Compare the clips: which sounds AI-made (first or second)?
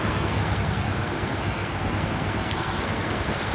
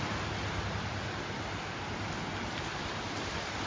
first